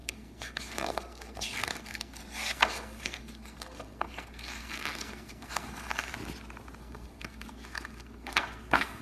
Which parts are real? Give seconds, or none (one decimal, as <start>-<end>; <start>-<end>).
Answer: 6.1-6.8